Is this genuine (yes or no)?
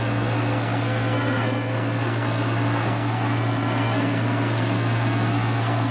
no